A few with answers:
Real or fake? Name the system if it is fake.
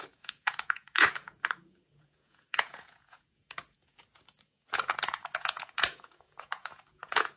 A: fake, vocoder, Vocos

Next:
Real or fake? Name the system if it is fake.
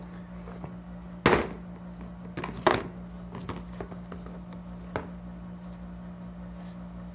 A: real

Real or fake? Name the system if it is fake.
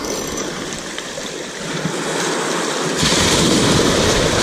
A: fake, vocoder, BigVGAN v2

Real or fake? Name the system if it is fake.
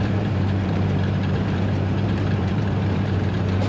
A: fake, vocoder, BigVGAN v2